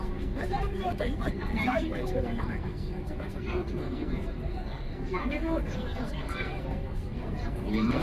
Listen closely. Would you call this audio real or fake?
fake